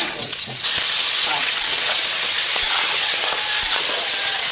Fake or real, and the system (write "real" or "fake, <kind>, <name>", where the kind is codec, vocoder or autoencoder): fake, vocoder, WaveNeXt